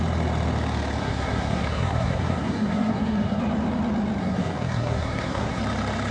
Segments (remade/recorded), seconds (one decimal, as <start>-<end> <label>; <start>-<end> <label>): 0.0-1.0 recorded; 1.0-3.4 remade; 3.4-4.2 recorded; 4.2-5.6 remade; 5.6-6.1 recorded